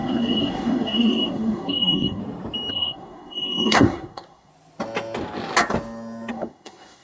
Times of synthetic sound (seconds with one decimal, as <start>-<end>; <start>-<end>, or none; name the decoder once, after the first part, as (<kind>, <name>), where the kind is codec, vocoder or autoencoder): 0.0-2.2 (codec, SNAC); 2.7-4.5; 6.3-7.0